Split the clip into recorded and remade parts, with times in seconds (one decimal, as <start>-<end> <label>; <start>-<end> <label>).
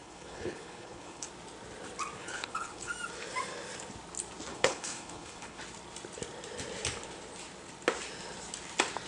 0.0-1.3 remade; 1.3-2.2 recorded; 2.2-2.9 remade; 2.9-4.5 recorded; 4.5-5.6 remade; 5.6-9.1 recorded